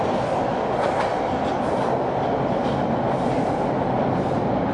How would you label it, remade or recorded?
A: recorded